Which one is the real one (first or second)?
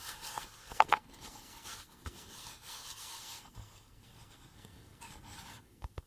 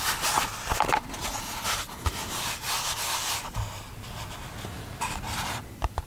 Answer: second